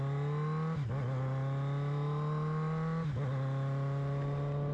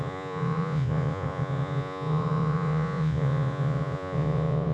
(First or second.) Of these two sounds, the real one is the first